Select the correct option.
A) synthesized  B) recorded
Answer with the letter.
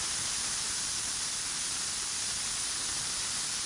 B